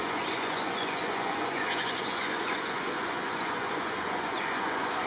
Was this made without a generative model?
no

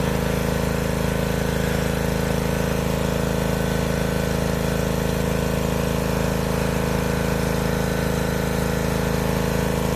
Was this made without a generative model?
yes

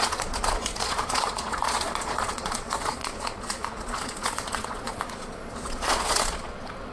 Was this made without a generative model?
no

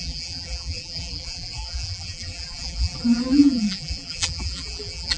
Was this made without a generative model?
no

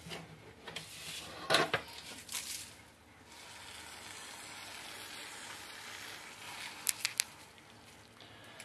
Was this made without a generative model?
yes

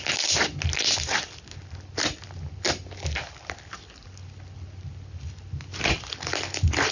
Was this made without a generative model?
yes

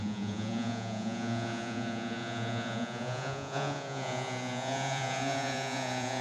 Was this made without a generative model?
no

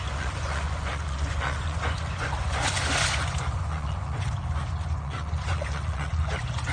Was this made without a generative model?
no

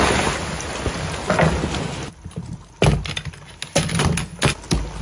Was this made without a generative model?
yes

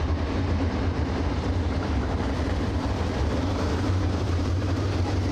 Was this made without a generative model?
no